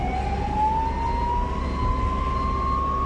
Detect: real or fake real